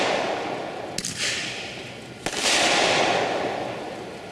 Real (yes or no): yes